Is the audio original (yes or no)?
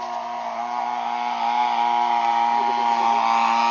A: yes